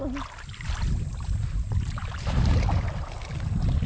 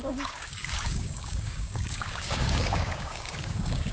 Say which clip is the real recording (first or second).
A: first